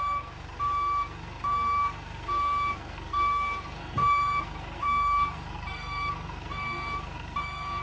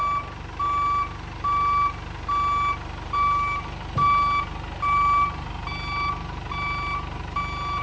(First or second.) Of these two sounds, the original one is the second